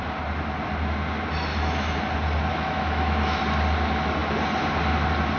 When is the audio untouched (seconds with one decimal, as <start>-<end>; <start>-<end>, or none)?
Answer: 0.0-1.5; 2.0-2.5; 3.4-5.4